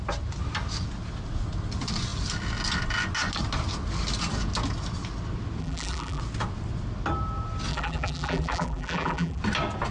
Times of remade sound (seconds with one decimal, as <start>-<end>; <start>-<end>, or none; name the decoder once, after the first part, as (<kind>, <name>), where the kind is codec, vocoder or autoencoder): 5.6-6.2 (vocoder, BigVGAN v2); 7.7-9.4

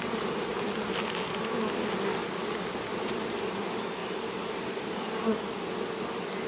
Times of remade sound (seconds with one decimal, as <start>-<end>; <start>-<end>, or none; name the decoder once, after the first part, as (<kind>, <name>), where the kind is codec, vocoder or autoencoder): 4.0-5.4 (vocoder, BigVGAN v2)

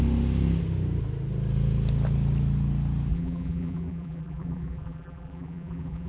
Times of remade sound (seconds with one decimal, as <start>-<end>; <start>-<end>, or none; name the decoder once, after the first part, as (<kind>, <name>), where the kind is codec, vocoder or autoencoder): 3.1-6.1 (vocoder, BigVGAN v2)

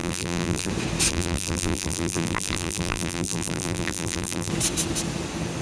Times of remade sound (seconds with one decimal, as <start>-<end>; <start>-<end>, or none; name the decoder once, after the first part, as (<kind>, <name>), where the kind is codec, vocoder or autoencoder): 0.0-0.7 (vocoder, BigVGAN v2); 1.1-4.5

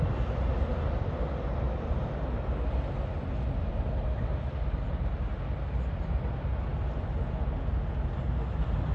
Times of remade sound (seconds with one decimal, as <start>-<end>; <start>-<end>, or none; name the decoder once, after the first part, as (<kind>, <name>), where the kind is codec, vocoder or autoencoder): 0.7-3.7 (vocoder, BigVGAN v2)

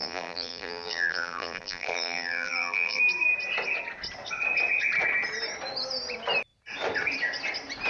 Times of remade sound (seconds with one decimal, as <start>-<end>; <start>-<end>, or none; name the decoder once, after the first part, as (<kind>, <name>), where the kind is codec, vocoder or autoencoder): 0.0-3.0 (vocoder, BigVGAN v2)